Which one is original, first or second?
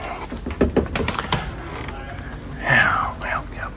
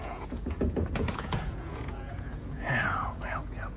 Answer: first